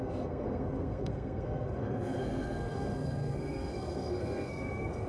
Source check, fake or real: fake